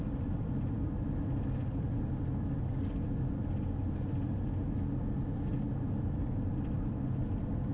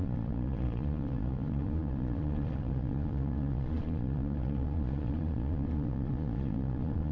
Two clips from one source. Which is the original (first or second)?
first